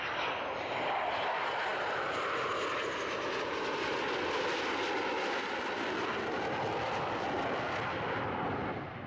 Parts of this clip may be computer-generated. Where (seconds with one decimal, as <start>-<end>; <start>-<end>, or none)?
none